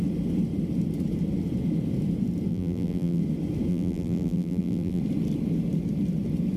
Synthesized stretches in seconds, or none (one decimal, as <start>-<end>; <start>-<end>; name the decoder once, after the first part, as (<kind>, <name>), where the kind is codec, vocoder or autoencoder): 2.5-3.2 (vocoder, BigVGAN v2); 3.7-5.0